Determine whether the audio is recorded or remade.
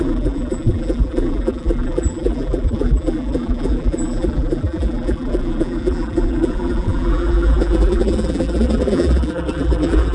remade